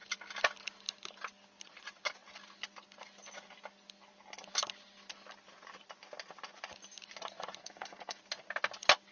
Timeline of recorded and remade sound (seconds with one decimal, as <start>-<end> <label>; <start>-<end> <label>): 0.0-7.6 recorded; 7.6-8.2 remade; 8.2-9.1 recorded